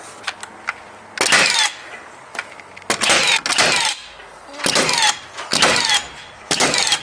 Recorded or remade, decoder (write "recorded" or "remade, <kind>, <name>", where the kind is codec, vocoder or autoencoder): recorded